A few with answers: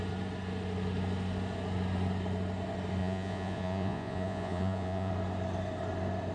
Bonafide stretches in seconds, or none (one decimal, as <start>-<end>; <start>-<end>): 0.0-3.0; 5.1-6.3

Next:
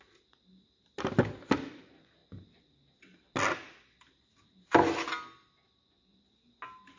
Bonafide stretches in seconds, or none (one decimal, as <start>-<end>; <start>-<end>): 0.0-7.0

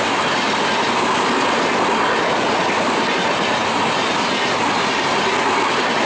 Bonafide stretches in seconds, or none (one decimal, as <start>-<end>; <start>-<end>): 0.0-6.1